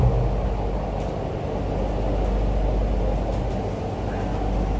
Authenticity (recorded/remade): recorded